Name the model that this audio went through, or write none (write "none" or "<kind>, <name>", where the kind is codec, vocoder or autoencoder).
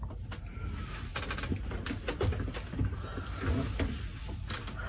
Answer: none